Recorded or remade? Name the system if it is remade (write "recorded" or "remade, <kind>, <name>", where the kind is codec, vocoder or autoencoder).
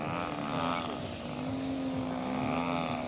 recorded